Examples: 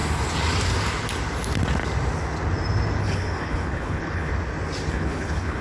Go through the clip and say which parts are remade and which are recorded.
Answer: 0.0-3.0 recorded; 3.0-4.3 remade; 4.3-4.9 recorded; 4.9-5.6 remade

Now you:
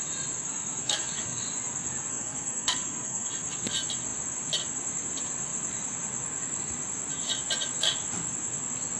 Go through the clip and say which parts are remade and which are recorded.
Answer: 0.0-0.8 recorded; 0.8-1.4 remade; 1.4-2.1 recorded; 2.1-3.3 remade; 3.3-9.0 recorded